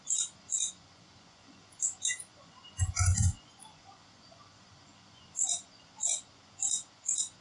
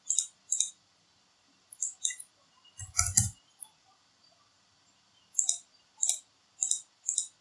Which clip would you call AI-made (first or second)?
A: first